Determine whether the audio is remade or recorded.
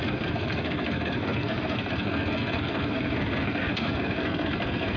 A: remade